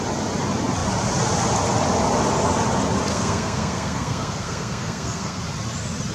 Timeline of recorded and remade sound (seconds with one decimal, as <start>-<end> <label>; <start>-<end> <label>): 0.0-3.1 recorded; 3.1-5.4 remade; 5.4-6.1 recorded